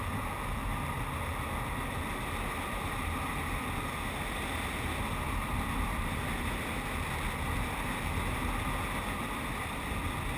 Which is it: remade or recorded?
recorded